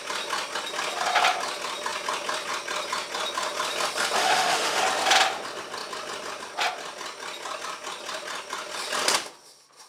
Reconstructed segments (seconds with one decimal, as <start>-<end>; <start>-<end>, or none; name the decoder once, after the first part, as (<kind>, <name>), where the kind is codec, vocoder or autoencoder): 4.2-4.8 (autoencoder, DAC-VAE)